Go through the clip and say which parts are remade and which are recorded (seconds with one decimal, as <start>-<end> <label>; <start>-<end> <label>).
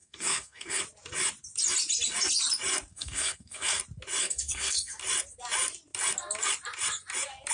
0.0-0.8 remade; 0.8-2.9 recorded; 2.9-3.8 remade; 3.8-4.2 recorded; 4.2-5.0 remade; 5.0-7.5 recorded